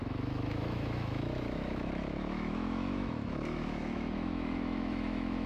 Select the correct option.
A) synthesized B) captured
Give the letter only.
A